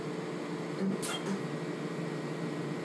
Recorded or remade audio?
recorded